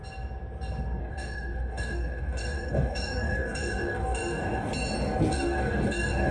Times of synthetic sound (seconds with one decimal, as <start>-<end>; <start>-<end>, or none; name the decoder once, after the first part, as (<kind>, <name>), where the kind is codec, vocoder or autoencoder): 1.0-4.7 (codec, DAC); 5.3-6.3